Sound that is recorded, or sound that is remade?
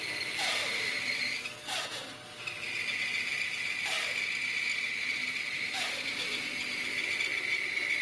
recorded